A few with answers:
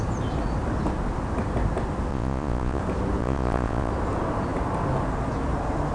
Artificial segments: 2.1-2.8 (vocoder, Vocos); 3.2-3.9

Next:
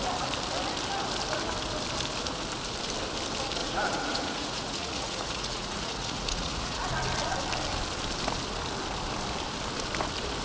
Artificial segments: 3.6-6.9 (vocoder, Vocos)